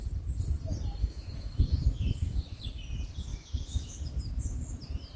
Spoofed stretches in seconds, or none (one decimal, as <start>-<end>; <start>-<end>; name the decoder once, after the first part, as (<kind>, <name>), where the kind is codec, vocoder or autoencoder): 1.0-2.6 (autoencoder, DAC-VAE); 3.3-4.2